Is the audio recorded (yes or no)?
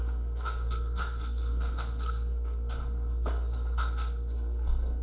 no